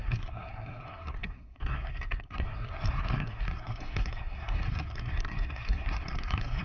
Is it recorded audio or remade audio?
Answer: remade